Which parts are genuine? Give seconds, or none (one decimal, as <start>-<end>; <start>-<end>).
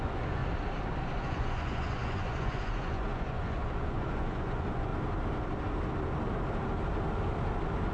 0.4-1.0; 4.9-7.9